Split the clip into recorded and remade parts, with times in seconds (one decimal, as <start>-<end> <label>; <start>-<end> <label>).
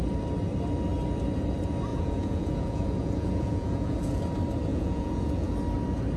0.0-1.9 recorded; 1.9-4.2 remade; 4.2-4.7 recorded; 4.7-5.5 remade; 5.5-6.2 recorded